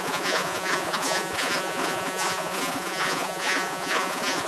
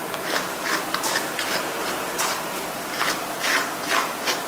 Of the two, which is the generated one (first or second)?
first